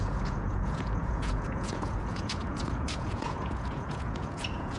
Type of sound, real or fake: fake